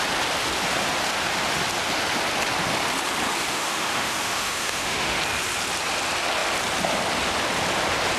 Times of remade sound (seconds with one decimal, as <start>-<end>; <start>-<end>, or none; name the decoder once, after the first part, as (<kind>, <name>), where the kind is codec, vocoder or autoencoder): 3.5-5.2 (autoencoder, DAC-VAE)